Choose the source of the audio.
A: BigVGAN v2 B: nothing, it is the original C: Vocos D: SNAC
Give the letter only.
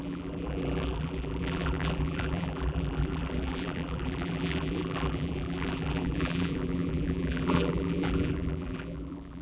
A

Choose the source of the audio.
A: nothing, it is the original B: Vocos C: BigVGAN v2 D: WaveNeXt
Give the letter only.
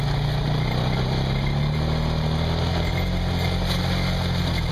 A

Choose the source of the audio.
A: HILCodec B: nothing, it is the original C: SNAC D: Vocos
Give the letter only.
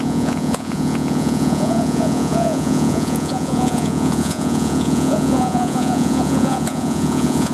D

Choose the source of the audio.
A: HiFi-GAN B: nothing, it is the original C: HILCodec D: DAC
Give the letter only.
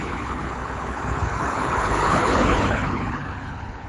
C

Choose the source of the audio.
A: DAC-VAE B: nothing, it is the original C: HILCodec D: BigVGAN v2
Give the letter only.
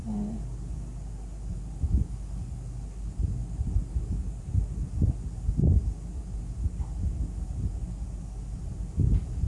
B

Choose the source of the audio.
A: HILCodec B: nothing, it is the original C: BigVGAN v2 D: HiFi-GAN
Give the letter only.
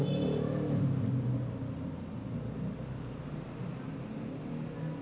B